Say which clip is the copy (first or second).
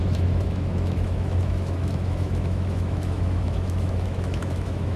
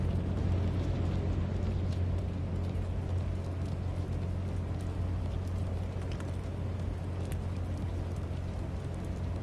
first